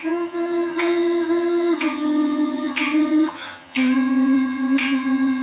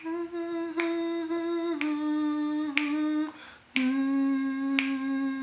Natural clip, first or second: second